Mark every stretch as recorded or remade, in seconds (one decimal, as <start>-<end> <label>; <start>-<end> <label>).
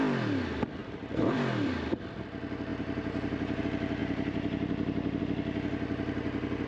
0.0-0.8 recorded; 0.8-2.0 remade; 2.0-2.7 recorded; 2.7-3.6 remade; 3.6-4.0 recorded; 4.0-5.2 remade; 5.2-6.7 recorded